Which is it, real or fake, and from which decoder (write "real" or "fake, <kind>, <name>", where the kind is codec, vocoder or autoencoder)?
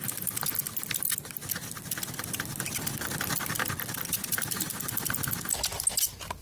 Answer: real